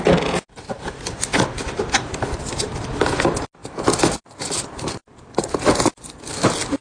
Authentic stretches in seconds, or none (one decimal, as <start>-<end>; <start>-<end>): 0.0-6.8